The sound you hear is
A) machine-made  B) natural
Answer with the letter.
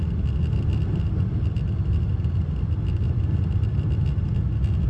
B